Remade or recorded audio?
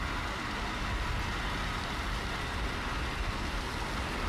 recorded